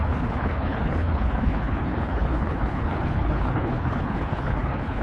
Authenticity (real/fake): fake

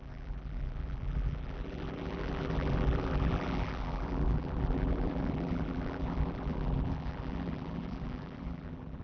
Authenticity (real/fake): fake